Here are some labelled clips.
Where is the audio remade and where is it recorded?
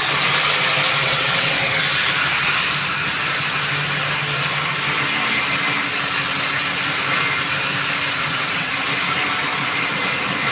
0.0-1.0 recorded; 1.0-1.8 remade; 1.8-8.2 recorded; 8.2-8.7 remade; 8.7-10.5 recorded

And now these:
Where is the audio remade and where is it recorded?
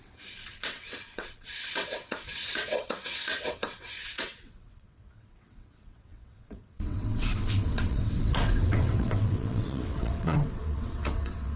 0.0-11.6 remade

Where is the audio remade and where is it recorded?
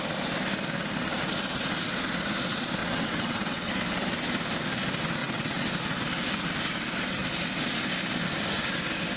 0.0-2.8 recorded; 2.8-3.7 remade; 3.7-5.2 recorded; 5.2-5.7 remade; 5.7-9.2 recorded